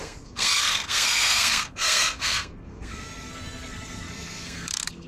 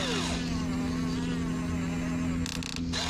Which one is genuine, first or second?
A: second